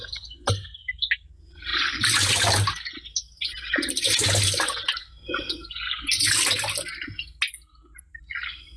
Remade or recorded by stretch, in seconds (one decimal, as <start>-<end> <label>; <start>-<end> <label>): 0.0-8.8 recorded